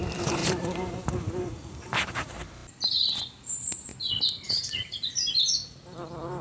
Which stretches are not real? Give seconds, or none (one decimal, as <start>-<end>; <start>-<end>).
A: 0.0-2.4; 3.5-3.9; 4.5-5.6